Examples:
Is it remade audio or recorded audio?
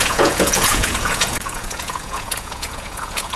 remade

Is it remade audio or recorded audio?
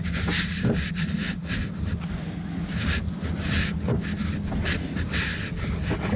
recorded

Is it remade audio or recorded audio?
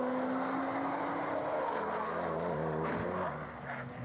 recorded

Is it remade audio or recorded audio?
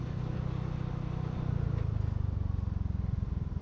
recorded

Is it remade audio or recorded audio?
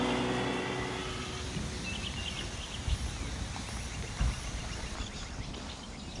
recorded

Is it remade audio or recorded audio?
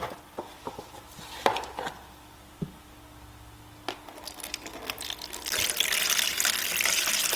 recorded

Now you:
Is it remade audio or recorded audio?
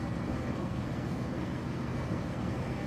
remade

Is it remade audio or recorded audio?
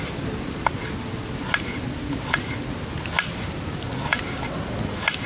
recorded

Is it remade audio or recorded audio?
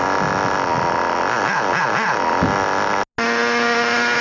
recorded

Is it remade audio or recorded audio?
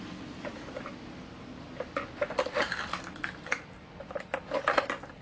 recorded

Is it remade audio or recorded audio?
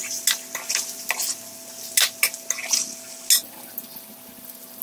recorded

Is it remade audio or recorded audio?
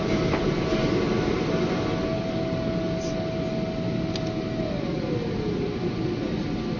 recorded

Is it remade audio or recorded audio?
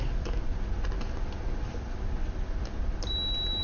recorded